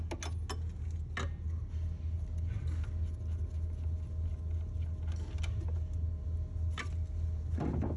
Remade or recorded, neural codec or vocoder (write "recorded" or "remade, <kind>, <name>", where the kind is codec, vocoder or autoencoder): recorded